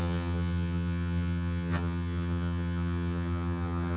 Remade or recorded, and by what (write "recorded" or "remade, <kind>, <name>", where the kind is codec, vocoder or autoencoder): remade, vocoder, HiFi-GAN